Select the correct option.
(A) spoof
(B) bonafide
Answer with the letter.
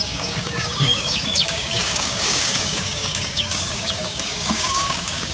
A